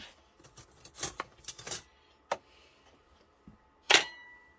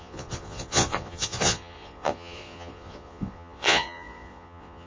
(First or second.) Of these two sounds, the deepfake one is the second